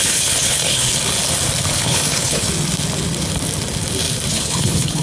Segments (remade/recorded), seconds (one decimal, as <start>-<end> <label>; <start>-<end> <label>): 0.0-0.9 remade; 0.9-1.7 recorded; 1.7-2.5 remade; 2.5-4.3 recorded; 4.3-5.0 remade